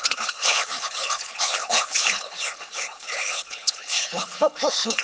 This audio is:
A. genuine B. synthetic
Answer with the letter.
B